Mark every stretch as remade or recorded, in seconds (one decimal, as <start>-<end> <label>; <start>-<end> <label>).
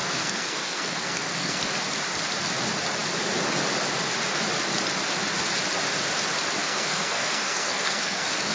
0.0-1.6 remade; 1.6-6.6 recorded; 6.6-8.5 remade